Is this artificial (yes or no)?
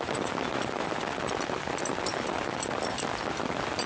no